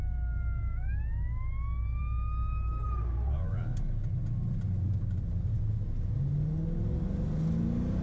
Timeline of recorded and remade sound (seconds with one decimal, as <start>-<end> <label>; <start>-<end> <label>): 0.0-8.0 recorded